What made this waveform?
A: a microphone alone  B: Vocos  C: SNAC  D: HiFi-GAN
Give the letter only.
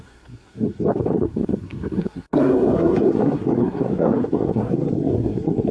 C